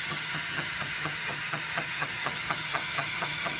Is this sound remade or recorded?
remade